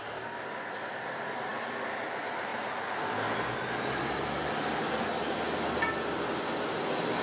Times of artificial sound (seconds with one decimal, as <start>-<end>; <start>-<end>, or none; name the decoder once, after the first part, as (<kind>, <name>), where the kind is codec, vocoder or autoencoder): none